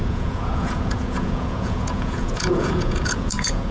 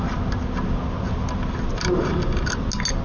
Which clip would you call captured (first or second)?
second